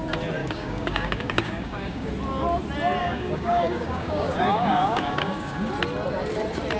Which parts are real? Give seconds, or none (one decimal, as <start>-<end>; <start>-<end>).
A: 0.0-0.4; 2.1-3.0; 5.7-6.8